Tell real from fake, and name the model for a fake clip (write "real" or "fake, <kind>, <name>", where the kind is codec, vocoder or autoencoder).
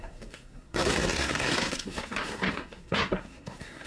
fake, codec, SNAC